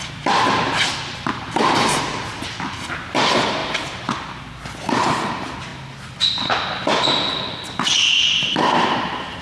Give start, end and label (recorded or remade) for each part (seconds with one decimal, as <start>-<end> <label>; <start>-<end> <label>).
0.0-5.7 remade; 5.7-8.5 recorded; 8.5-9.4 remade